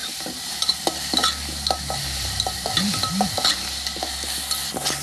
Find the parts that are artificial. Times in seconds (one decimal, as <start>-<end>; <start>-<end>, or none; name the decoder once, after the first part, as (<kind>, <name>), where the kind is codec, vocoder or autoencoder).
none